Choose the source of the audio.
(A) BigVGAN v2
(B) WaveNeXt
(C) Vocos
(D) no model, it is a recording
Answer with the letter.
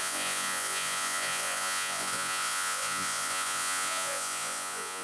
C